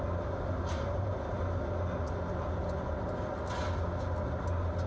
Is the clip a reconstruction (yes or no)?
no